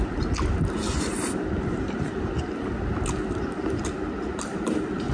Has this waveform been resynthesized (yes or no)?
no